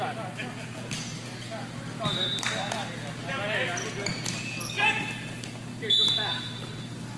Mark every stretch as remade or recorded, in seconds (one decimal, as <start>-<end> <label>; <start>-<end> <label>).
0.0-7.2 recorded